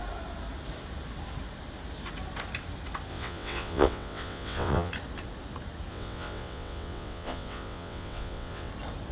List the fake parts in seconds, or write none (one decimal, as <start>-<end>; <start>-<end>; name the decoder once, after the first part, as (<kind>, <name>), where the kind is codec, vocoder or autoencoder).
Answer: 3.1-4.9 (vocoder, WaveNeXt); 5.9-8.7